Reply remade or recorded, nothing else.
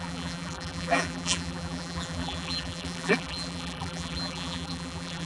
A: remade